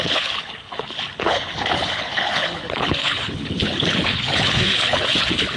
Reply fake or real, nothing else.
fake